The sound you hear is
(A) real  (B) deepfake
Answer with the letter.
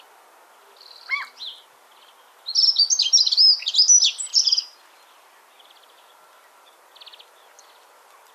A